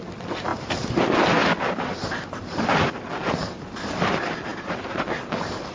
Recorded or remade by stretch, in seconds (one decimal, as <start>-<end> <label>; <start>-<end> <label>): 0.0-5.7 recorded